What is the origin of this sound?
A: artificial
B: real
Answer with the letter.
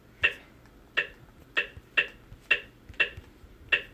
B